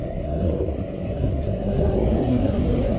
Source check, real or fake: fake